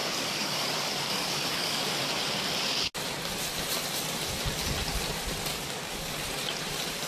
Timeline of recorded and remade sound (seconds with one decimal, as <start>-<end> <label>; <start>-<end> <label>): 0.0-1.8 remade; 1.8-5.5 recorded; 5.5-6.1 remade; 6.1-7.1 recorded